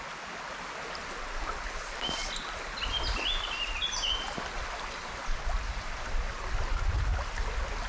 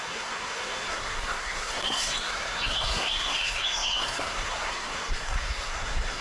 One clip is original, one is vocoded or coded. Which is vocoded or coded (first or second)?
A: second